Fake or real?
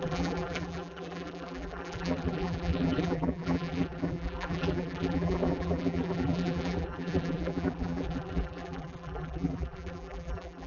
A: fake